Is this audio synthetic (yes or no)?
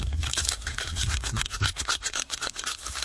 yes